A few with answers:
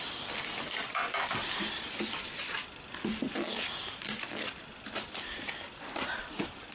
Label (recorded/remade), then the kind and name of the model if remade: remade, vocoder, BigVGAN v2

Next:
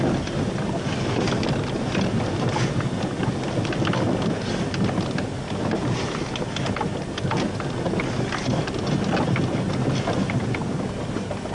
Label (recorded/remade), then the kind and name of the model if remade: recorded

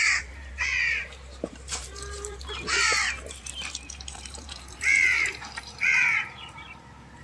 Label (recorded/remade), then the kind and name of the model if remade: remade, vocoder, BigVGAN v2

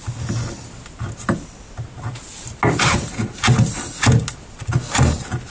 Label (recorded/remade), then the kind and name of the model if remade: recorded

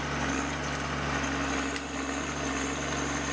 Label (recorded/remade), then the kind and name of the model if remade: recorded